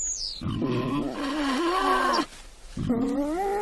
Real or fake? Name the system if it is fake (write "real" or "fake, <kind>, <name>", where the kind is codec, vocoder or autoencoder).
real